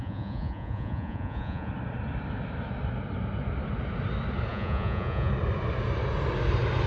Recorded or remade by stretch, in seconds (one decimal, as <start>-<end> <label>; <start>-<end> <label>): 0.0-1.7 remade; 1.7-4.5 recorded; 4.5-5.3 remade; 5.3-6.9 recorded

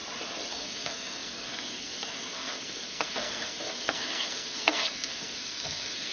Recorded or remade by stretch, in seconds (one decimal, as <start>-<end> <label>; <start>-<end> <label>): 0.0-0.5 recorded; 0.5-6.1 remade

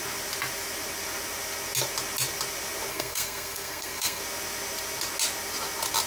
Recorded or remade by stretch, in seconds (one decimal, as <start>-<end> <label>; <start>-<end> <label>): 0.0-2.9 recorded; 2.9-4.2 remade; 4.2-6.1 recorded